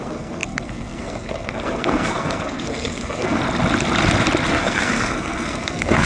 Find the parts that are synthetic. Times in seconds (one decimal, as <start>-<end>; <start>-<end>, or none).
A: 0.0-3.4; 4.5-6.1